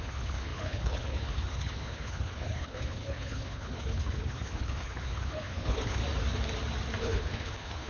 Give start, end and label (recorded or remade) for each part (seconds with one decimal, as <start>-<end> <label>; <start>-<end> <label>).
0.0-6.0 remade; 6.0-7.0 recorded; 7.0-7.9 remade